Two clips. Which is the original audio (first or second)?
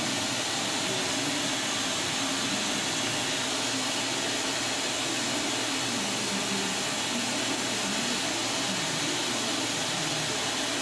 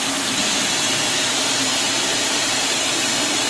first